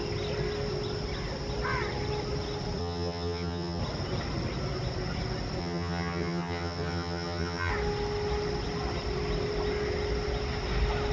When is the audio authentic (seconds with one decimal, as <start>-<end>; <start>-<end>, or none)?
0.0-2.8; 3.8-5.6; 7.7-11.1